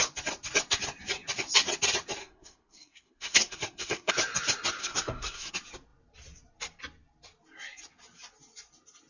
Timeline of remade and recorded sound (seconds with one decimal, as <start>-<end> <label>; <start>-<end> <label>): 0.0-2.2 recorded; 2.2-4.1 remade; 4.1-4.8 recorded; 4.8-5.5 remade; 5.5-9.1 recorded